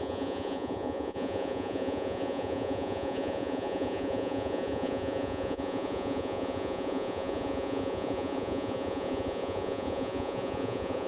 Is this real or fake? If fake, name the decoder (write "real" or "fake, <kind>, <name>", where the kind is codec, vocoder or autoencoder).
fake, vocoder, Vocos